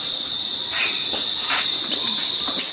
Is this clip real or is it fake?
real